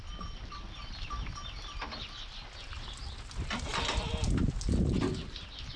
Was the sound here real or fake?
real